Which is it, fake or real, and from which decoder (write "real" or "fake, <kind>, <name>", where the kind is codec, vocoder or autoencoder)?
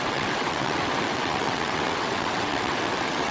fake, vocoder, WaveNeXt